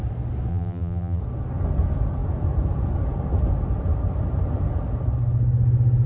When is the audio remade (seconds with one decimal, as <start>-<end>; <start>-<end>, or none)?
0.5-1.2